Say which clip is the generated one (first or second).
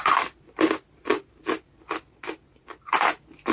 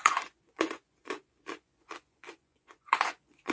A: second